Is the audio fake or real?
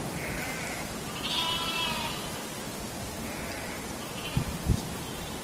fake